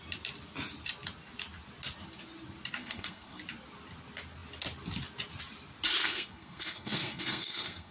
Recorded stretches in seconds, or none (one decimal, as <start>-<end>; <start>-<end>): 0.0-2.8; 3.4-6.0